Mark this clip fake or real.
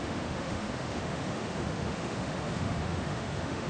fake